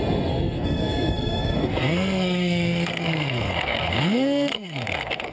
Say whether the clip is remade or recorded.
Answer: remade